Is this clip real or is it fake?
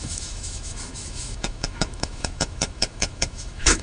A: fake